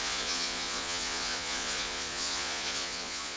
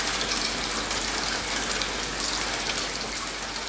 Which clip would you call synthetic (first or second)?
first